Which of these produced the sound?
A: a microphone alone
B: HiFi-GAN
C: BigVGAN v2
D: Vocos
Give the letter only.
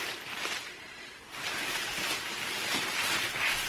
C